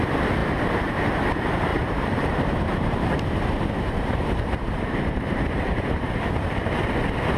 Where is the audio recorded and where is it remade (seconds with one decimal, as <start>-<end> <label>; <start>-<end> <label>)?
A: 0.0-1.7 recorded; 1.7-6.1 remade; 6.1-7.4 recorded